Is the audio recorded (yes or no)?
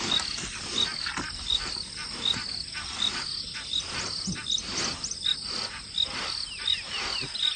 yes